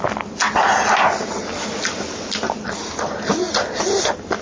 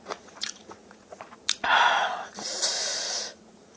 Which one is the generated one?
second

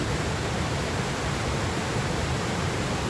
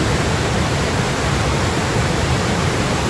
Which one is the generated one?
first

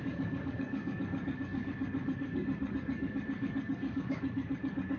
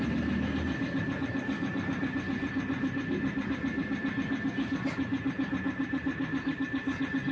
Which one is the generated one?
first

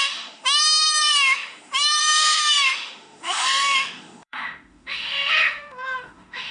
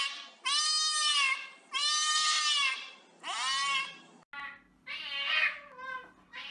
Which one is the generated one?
first